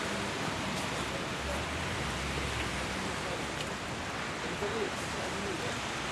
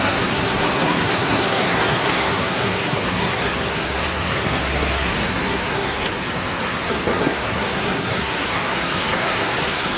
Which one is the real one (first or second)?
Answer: first